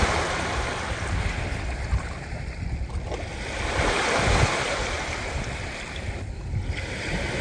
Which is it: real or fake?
real